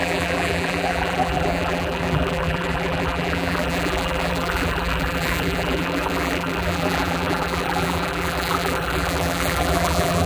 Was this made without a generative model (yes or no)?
no